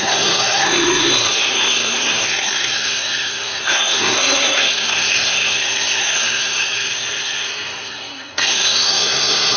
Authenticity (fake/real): fake